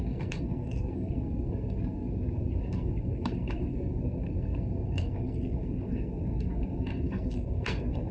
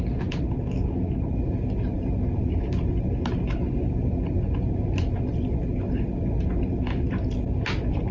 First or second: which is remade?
first